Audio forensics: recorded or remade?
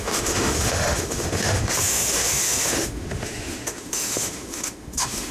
remade